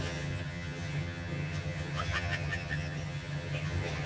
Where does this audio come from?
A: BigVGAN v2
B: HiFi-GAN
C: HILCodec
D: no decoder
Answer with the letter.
B